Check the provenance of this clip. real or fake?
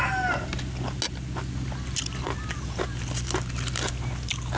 real